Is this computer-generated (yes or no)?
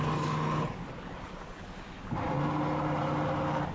no